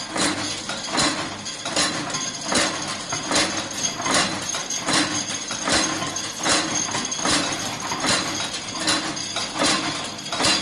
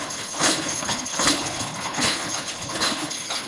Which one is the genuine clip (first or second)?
first